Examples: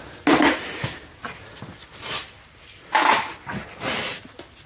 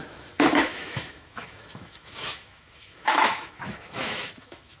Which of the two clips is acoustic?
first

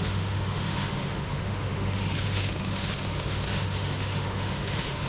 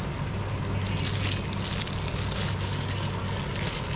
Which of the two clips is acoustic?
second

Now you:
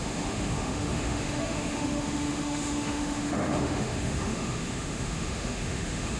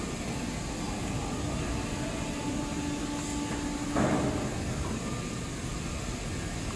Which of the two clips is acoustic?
second